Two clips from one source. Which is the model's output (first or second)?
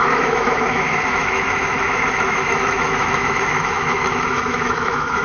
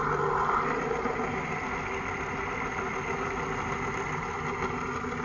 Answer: first